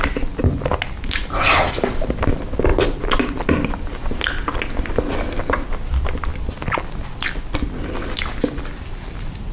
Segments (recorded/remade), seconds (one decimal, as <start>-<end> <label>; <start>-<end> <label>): 0.0-9.5 recorded